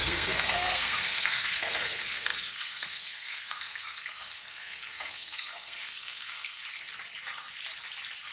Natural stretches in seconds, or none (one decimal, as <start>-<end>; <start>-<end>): 6.6-8.3